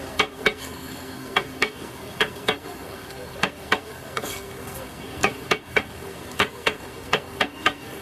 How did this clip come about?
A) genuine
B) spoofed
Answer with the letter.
B